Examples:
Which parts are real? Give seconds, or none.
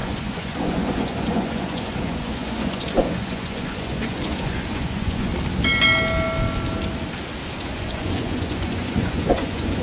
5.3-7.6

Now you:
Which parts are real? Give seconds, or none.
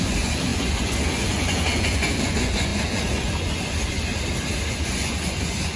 4.1-4.7